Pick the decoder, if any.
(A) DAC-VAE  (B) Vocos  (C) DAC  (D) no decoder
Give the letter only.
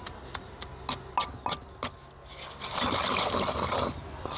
D